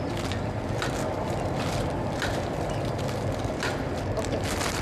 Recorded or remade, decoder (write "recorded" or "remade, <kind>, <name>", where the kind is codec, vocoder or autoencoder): recorded